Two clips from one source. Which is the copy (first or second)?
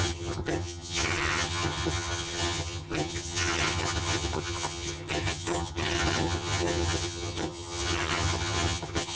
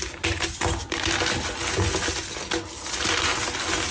first